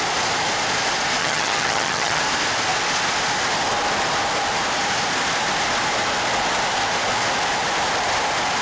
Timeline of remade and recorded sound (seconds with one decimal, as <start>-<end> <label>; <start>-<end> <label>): 0.0-1.2 recorded; 1.2-2.2 remade; 2.2-8.6 recorded